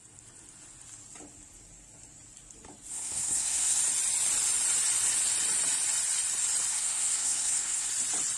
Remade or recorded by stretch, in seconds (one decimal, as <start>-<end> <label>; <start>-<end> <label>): 0.0-2.9 recorded; 2.9-3.8 remade; 3.8-6.7 recorded; 6.7-7.9 remade; 7.9-8.4 recorded